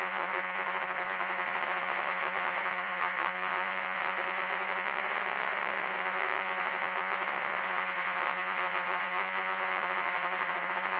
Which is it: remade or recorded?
remade